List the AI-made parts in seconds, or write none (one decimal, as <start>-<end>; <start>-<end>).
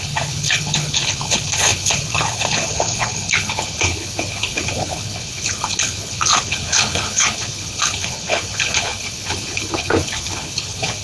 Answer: 0.0-11.0